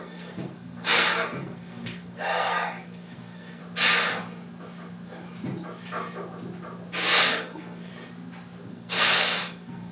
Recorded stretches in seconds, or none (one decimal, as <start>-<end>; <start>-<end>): 3.6-7.3; 7.9-8.7